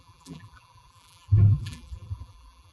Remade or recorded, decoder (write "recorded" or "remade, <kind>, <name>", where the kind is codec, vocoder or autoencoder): remade, vocoder, BigVGAN v2